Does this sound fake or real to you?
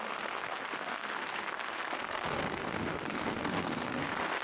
fake